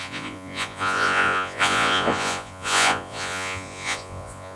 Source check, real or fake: fake